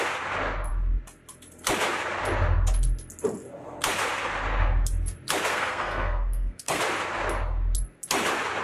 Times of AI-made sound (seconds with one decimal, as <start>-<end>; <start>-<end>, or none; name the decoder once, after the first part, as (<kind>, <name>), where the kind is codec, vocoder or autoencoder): 5.5-6.8 (codec, SNAC)